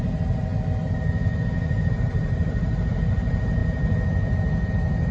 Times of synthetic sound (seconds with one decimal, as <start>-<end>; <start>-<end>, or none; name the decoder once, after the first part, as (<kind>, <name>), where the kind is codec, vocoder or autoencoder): 0.0-0.5 (vocoder, BigVGAN v2); 1.9-3.6